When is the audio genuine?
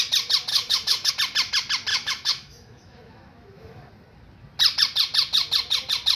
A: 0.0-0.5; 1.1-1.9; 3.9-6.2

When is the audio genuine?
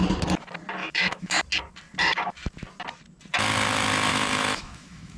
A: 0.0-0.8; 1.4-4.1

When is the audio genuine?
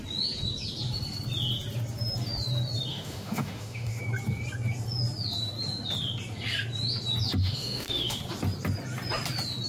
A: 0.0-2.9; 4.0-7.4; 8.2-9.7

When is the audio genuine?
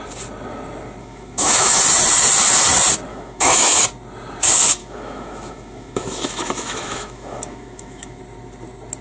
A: 0.0-1.0; 1.8-3.1; 3.8-4.8; 8.2-9.0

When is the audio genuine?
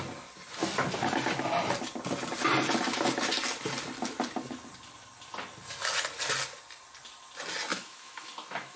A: 0.0-7.7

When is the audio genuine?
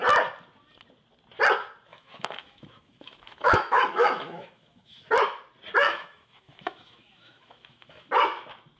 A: 0.0-1.9; 5.1-5.8; 8.1-8.8